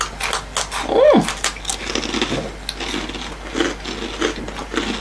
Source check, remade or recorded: recorded